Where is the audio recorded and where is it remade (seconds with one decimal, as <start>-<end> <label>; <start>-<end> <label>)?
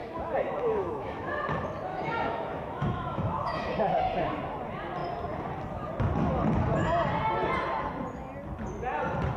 0.0-1.3 remade; 1.3-1.9 recorded; 1.9-3.7 remade; 3.7-9.4 recorded